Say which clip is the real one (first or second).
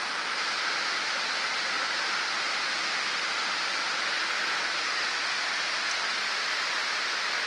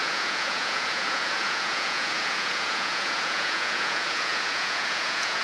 first